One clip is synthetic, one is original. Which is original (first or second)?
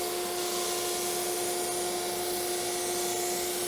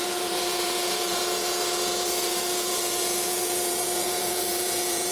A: first